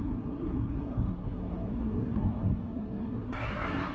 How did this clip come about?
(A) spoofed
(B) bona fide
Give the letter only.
A